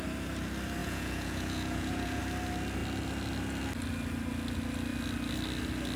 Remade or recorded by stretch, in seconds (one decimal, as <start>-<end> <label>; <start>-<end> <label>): 0.0-0.8 recorded; 0.8-2.2 remade; 2.2-6.0 recorded